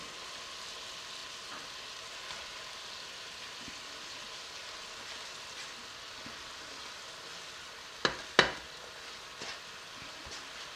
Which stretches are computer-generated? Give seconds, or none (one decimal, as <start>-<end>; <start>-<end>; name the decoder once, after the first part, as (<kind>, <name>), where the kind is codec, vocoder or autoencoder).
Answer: none